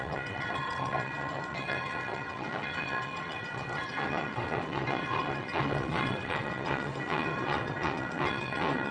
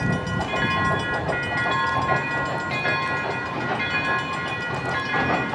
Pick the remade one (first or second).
first